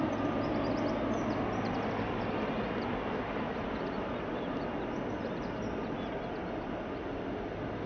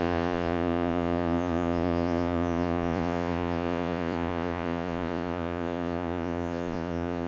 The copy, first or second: second